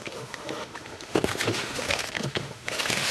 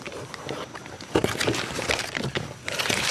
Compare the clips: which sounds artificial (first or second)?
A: first